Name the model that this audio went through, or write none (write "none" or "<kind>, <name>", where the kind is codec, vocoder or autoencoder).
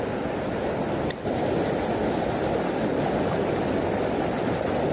none